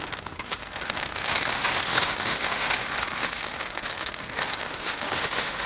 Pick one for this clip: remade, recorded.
remade